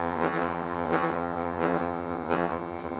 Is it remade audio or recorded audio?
remade